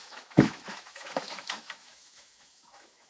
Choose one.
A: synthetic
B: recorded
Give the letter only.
A